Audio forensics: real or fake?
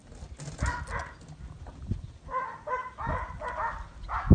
real